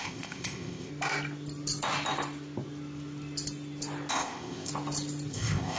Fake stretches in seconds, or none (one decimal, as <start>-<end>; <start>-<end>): 0.0-0.9; 4.1-4.7; 5.3-5.8